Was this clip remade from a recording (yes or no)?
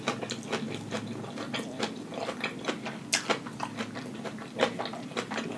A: no